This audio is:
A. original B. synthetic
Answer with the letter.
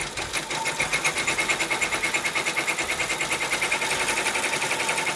A